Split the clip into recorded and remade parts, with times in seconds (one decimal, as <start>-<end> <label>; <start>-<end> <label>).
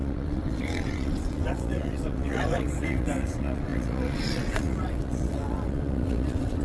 0.0-6.6 remade